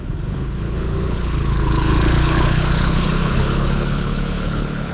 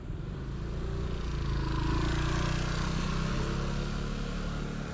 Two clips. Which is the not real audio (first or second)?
first